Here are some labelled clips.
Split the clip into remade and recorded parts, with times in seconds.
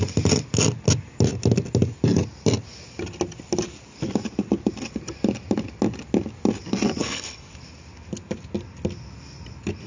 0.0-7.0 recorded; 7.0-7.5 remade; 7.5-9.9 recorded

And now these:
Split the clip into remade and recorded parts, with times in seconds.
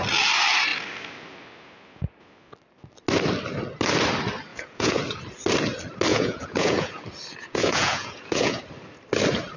0.0-4.5 recorded; 4.5-5.0 remade; 5.0-6.1 recorded; 6.1-7.0 remade; 7.0-7.4 recorded; 7.4-8.6 remade; 8.6-9.6 recorded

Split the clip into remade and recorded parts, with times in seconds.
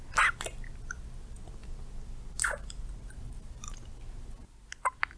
0.0-5.2 recorded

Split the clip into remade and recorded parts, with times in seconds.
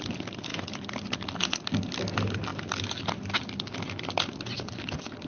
0.0-5.3 recorded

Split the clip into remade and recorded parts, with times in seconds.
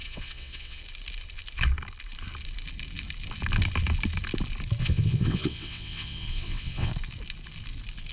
0.0-0.8 remade; 0.8-4.8 recorded; 4.8-6.9 remade; 6.9-8.1 recorded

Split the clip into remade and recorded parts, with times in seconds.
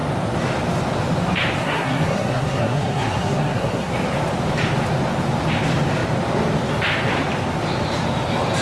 0.0-1.6 recorded; 1.6-3.9 remade; 3.9-8.6 recorded